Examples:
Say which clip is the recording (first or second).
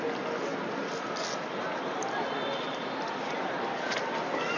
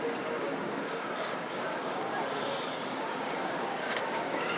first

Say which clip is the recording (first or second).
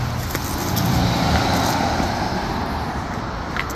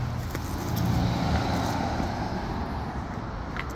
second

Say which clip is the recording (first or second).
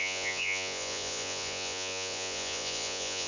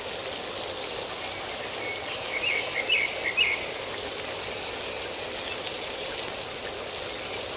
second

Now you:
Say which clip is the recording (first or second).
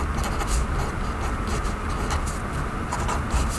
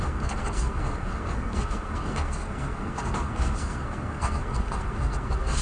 first